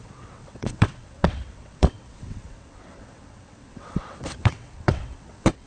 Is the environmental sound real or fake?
fake